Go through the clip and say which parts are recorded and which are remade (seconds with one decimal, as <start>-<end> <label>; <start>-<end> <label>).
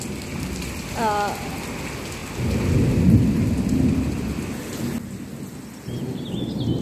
0.0-6.8 recorded